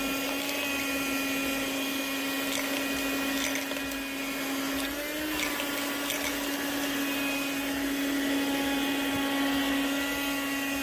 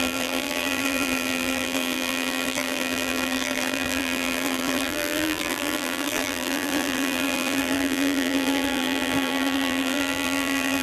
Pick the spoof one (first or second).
second